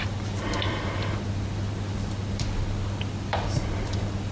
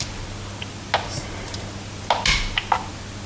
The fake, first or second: first